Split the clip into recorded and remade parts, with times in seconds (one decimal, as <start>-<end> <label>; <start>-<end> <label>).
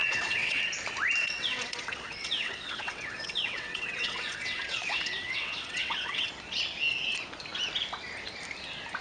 0.0-0.6 remade; 0.6-1.2 recorded; 1.2-6.3 remade; 6.3-9.0 recorded